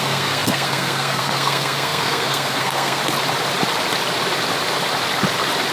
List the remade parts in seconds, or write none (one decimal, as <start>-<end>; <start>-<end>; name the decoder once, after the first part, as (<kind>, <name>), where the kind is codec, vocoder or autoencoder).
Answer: 0.0-3.0 (codec, SNAC)